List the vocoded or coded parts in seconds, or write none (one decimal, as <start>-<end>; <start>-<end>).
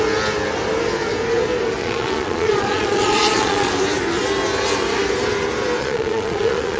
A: 1.8-3.7; 5.8-6.8